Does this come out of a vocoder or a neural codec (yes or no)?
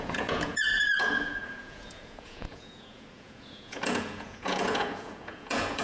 yes